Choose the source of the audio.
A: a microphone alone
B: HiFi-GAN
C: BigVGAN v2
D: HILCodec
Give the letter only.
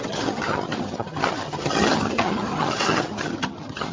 B